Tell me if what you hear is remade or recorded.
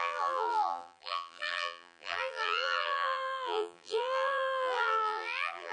remade